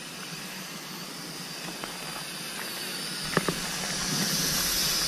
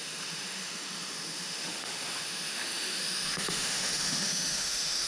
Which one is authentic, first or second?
first